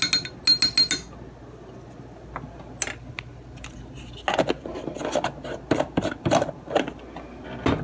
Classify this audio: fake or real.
real